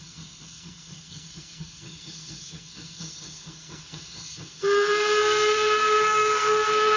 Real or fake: fake